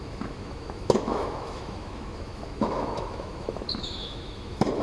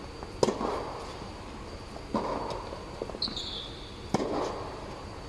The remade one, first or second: first